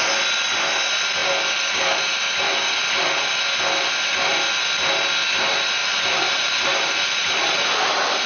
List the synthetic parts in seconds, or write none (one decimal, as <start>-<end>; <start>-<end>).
5.8-7.7